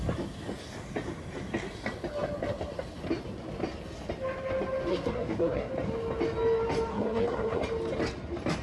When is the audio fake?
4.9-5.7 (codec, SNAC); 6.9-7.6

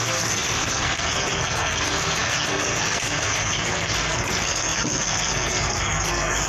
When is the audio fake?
0.0-6.5 (codec, SNAC)

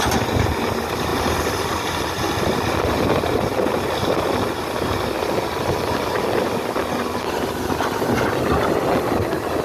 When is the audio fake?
none